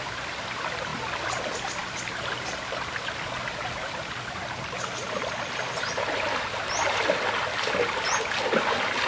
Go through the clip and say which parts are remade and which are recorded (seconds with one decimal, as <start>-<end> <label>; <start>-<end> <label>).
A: 0.0-9.1 recorded